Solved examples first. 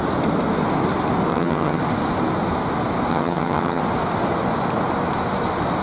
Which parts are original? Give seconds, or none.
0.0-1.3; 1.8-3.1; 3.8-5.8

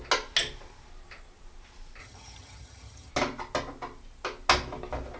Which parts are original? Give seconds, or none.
0.0-2.0; 3.1-5.2

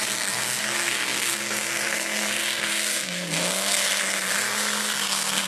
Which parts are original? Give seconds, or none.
none

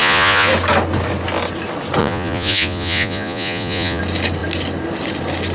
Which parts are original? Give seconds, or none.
0.5-2.0; 4.0-5.5

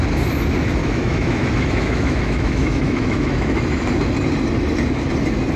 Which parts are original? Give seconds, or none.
0.0-0.8; 3.9-5.6

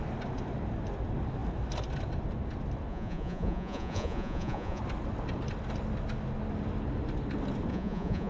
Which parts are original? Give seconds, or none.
0.0-2.9; 4.8-7.7

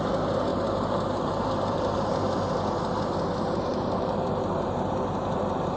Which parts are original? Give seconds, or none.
0.0-0.5; 2.1-3.7

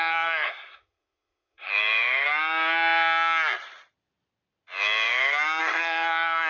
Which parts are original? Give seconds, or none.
1.7-5.6